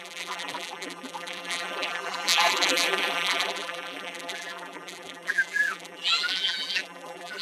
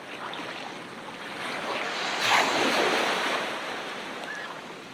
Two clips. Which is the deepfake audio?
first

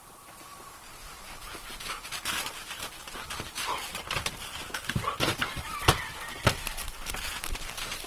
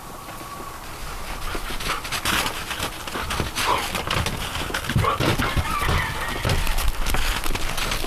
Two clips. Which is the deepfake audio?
first